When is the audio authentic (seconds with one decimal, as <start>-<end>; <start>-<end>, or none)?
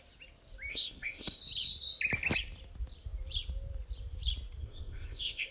0.0-0.7; 1.4-4.6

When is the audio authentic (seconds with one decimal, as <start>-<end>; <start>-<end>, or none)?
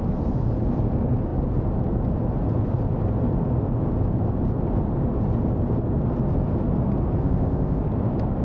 0.0-7.2; 7.8-8.4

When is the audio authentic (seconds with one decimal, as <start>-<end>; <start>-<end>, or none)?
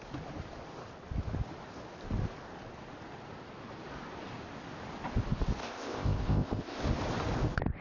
0.0-5.6; 6.8-7.8